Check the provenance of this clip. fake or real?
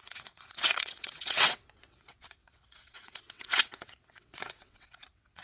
fake